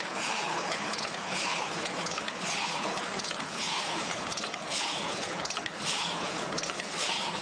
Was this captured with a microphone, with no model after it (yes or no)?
no